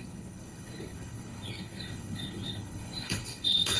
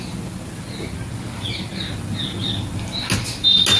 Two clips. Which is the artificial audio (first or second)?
first